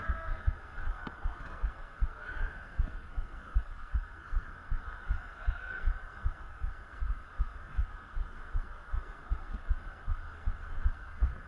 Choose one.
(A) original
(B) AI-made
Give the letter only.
B